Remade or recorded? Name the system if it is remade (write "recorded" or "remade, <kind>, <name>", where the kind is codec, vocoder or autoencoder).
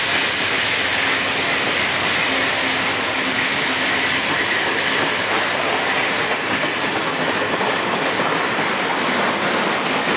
recorded